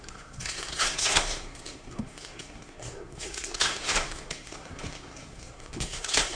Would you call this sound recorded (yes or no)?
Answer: no